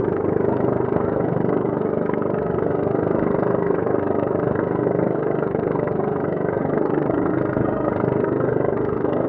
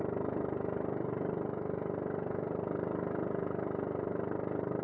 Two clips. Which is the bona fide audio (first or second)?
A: second